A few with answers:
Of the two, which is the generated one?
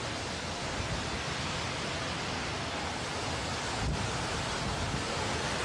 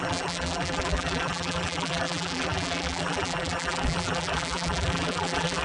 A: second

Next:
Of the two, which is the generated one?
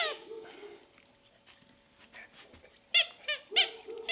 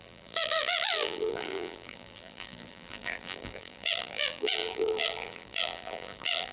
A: second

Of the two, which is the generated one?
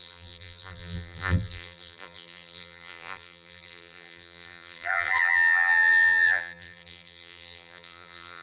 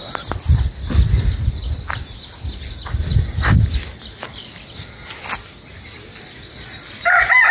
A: first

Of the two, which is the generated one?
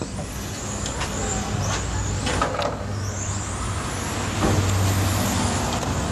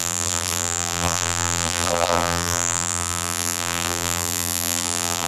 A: second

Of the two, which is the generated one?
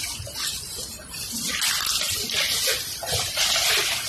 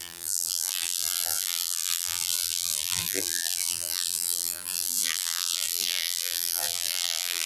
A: second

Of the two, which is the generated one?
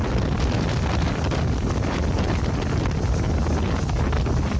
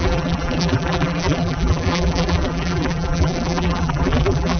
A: second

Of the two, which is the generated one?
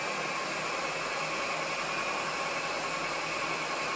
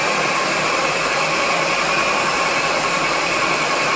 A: second